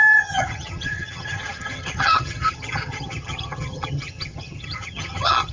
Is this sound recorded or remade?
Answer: remade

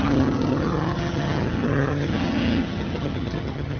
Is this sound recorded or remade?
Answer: remade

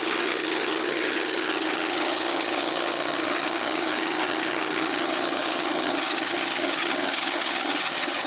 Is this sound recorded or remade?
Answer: remade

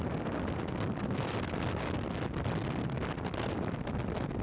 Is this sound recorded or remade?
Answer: recorded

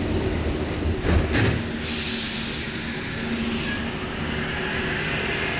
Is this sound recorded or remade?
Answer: recorded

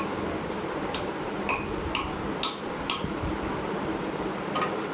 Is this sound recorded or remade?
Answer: recorded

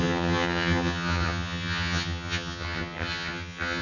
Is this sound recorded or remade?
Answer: remade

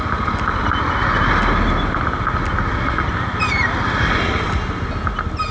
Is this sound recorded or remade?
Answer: recorded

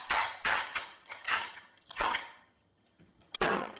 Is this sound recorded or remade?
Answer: remade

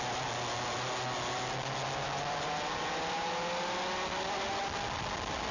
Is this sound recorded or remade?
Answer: recorded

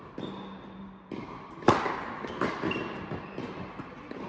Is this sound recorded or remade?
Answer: recorded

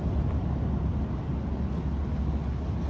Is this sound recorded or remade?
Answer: recorded